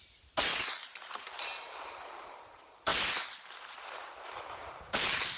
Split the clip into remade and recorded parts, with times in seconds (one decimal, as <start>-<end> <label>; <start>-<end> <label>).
0.0-0.5 remade; 0.5-1.1 recorded; 1.1-2.9 remade; 2.9-4.2 recorded; 4.2-5.4 remade